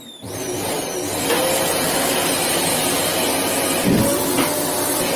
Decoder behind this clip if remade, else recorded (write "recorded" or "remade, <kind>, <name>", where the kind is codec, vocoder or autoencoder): recorded